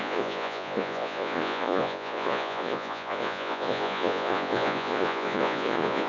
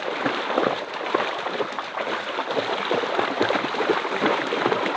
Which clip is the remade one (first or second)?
first